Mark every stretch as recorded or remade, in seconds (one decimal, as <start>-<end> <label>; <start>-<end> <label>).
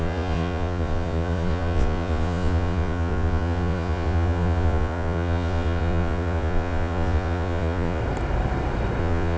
0.0-8.0 remade; 8.0-9.0 recorded; 9.0-9.4 remade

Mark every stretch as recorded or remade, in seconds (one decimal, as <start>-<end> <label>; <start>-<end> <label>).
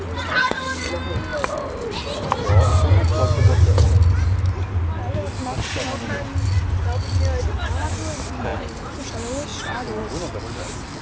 0.0-0.4 recorded; 0.4-0.9 remade; 0.9-11.0 recorded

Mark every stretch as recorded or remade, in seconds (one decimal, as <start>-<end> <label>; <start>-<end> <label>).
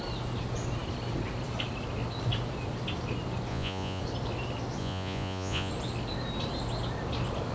0.0-3.5 recorded; 3.5-4.0 remade; 4.0-4.8 recorded; 4.8-5.7 remade; 5.7-7.5 recorded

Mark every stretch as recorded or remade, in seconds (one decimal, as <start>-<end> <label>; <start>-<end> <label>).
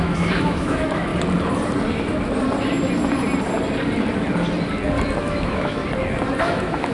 0.0-1.1 remade; 1.1-5.2 recorded; 5.2-5.8 remade; 5.8-6.4 recorded; 6.4-6.9 remade